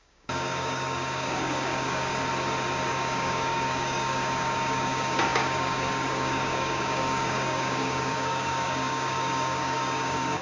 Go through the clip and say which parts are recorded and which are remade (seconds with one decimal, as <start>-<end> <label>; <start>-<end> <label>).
0.0-2.1 remade; 2.1-2.9 recorded; 2.9-10.4 remade

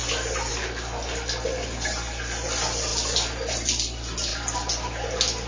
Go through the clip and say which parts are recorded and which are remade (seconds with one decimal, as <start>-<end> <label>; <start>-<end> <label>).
0.0-5.5 recorded

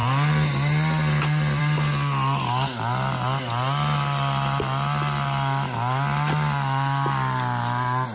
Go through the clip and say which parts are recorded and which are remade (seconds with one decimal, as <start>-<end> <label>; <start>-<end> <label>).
0.0-8.1 recorded

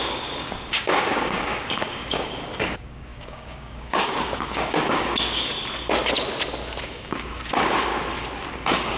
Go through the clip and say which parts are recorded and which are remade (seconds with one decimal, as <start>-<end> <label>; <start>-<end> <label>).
0.0-5.5 remade; 5.5-6.8 recorded; 6.8-7.9 remade; 7.9-8.5 recorded; 8.5-9.0 remade

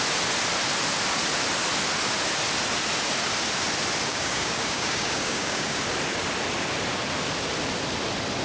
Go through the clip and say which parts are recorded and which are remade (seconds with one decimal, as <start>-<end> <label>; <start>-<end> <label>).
0.0-4.1 recorded; 4.1-5.8 remade; 5.8-8.4 recorded

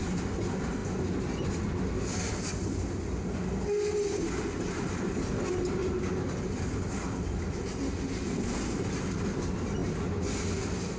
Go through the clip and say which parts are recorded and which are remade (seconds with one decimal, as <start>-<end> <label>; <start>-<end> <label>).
0.0-11.0 recorded

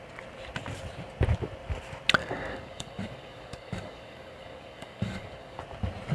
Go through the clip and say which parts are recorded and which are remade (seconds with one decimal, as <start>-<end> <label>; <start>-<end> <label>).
0.0-2.2 recorded; 2.2-5.6 remade; 5.6-6.1 recorded